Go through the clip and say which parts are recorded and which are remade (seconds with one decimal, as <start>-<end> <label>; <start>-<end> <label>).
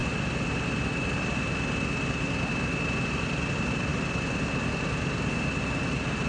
0.0-6.3 recorded